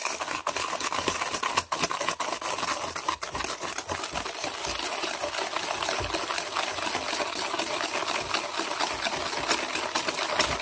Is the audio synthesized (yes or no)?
no